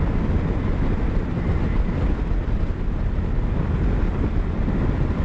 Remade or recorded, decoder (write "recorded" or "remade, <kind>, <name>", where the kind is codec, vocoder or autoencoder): recorded